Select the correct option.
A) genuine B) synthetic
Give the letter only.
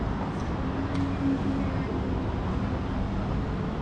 A